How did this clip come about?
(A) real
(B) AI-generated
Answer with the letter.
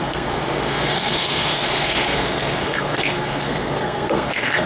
B